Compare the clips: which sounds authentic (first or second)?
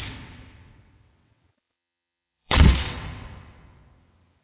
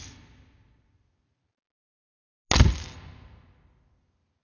second